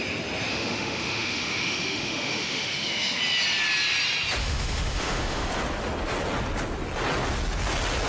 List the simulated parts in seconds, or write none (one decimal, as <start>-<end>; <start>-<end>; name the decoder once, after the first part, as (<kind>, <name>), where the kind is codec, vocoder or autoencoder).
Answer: 0.5-3.2 (autoencoder, DAC-VAE); 4.4-5.5